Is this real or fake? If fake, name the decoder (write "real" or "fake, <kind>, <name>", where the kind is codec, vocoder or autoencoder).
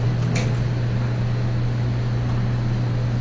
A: real